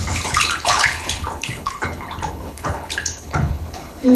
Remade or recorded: remade